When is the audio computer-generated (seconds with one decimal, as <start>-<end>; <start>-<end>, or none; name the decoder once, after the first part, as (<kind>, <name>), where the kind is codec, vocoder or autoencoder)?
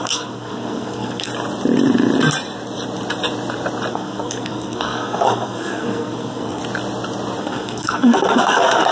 0.0-1.3 (codec, SNAC); 3.9-6.6; 7.4-8.9